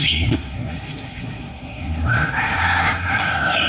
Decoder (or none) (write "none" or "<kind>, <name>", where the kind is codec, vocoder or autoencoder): codec, SNAC